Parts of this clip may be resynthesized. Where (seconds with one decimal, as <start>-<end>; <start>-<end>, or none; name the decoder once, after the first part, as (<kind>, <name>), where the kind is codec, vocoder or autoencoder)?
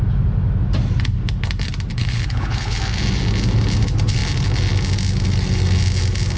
1.9-2.8 (codec, HILCodec)